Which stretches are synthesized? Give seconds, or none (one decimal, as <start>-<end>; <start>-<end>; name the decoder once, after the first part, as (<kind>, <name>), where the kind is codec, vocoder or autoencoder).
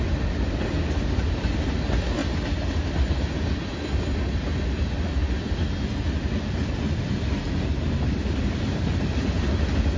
none